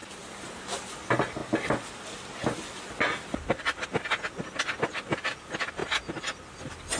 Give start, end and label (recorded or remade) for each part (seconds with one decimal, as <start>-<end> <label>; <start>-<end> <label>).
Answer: 0.0-7.0 recorded